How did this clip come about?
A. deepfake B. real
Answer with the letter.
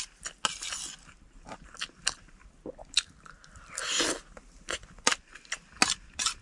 B